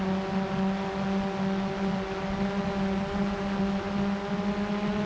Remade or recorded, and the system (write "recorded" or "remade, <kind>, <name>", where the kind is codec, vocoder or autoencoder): recorded